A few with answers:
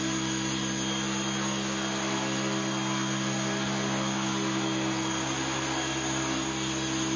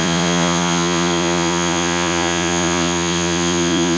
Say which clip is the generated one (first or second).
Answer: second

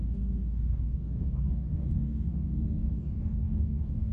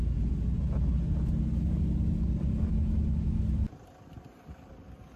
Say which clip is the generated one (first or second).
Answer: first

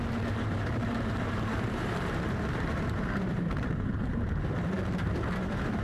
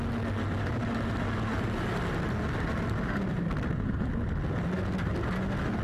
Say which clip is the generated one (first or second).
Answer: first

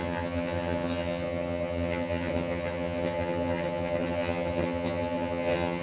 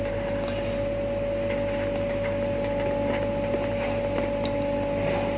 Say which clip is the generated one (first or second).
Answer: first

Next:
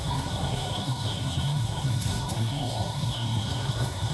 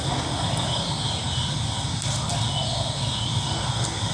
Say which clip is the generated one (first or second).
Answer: first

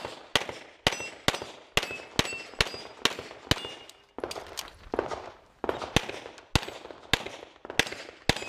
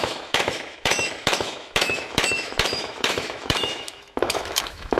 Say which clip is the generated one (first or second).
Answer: second